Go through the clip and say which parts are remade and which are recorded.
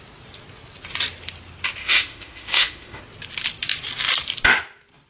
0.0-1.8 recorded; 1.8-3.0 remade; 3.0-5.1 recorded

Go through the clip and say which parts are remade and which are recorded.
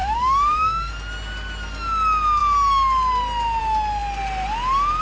0.0-0.9 remade; 0.9-5.0 recorded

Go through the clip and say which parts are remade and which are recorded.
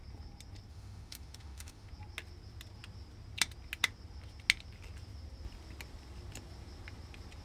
0.0-0.7 recorded; 0.7-1.9 remade; 1.9-7.4 recorded